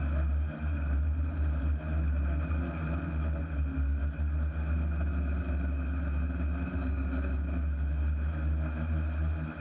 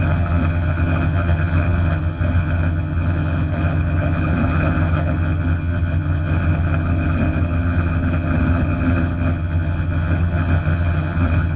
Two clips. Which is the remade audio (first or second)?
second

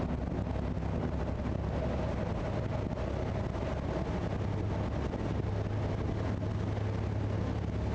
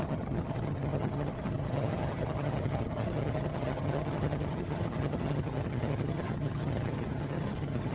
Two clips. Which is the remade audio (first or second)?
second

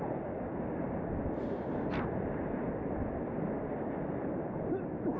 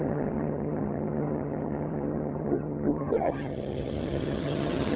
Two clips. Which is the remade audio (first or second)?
second